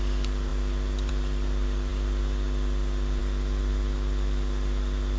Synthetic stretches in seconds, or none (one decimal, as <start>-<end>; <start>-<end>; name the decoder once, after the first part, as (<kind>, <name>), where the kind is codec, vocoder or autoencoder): none

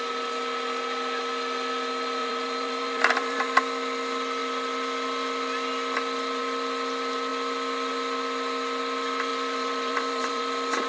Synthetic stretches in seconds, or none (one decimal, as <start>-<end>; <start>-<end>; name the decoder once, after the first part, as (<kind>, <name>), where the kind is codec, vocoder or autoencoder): 2.2-3.6 (vocoder, BigVGAN v2); 9.3-10.4

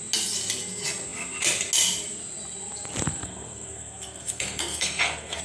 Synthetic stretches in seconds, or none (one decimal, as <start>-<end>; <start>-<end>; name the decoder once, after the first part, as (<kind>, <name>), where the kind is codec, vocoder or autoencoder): 3.2-5.4 (codec, SNAC)

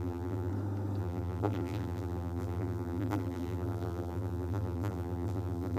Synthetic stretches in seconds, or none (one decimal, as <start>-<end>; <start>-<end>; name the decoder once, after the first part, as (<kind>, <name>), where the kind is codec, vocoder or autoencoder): 0.0-0.5 (vocoder, BigVGAN v2); 1.0-5.8

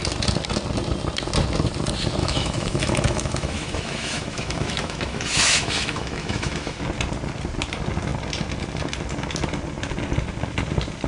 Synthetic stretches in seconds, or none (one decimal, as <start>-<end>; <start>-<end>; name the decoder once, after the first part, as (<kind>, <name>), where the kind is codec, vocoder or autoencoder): 2.2-6.8 (autoencoder, DAC-VAE)

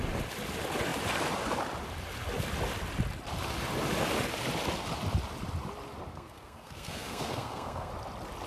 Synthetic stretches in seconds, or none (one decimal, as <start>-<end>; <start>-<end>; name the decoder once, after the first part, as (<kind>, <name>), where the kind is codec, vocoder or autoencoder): 6.1-7.9 (codec, SNAC)

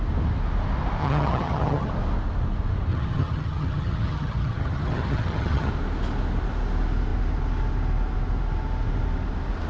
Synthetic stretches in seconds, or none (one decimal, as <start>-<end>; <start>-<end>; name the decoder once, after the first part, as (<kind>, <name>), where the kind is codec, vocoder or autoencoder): 1.0-1.9 (vocoder, HiFi-GAN); 2.9-5.7

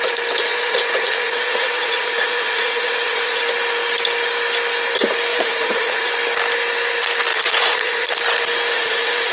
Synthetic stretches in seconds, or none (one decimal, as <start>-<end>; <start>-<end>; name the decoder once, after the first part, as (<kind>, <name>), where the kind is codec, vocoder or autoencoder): 0.5-3.4 (vocoder, Vocos); 5.3-6.1; 7.3-8.1; 8.7-9.3